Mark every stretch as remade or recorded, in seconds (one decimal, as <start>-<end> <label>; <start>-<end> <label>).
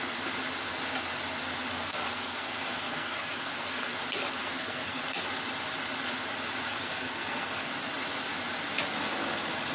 0.0-1.7 recorded; 1.7-3.9 remade; 3.9-4.4 recorded; 4.4-5.0 remade; 5.0-6.7 recorded; 6.7-7.7 remade; 7.7-9.7 recorded